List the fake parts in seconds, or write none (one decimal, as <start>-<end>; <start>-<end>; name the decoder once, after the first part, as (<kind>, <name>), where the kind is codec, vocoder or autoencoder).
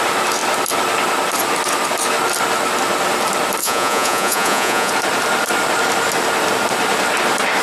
3.6-4.9 (vocoder, Vocos)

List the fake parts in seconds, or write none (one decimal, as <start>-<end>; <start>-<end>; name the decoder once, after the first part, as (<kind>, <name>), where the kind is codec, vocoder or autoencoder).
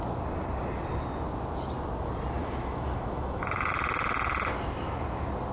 2.4-3.7 (autoencoder, DAC-VAE)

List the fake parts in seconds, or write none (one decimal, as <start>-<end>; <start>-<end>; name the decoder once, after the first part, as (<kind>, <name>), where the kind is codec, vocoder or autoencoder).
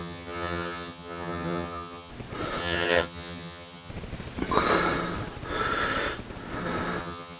0.0-2.1 (vocoder, HiFi-GAN); 2.6-3.9; 7.0-7.4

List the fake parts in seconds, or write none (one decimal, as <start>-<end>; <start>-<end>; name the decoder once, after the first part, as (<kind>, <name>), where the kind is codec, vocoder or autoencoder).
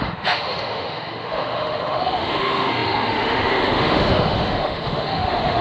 0.0-5.6 (autoencoder, DAC-VAE)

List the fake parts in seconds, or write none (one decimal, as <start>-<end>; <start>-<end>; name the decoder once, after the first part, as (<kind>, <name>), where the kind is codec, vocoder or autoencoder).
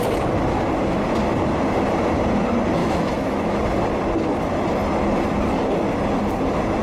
2.8-3.6 (autoencoder, DAC-VAE)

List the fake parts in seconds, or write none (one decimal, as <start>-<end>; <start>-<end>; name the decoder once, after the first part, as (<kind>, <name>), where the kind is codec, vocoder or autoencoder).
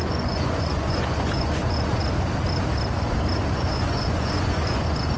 0.0-2.0 (vocoder, Vocos); 3.5-5.2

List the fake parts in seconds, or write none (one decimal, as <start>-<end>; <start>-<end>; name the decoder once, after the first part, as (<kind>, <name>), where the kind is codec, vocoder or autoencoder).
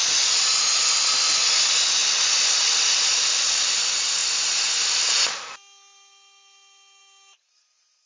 2.0-3.5 (vocoder, BigVGAN v2)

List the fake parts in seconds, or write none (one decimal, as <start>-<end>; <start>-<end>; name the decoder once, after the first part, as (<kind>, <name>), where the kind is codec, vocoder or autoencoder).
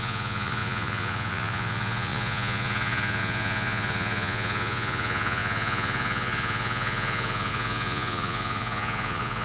0.0-9.4 (vocoder, Vocos)